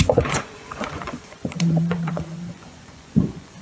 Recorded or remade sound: remade